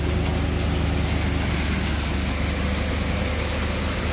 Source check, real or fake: real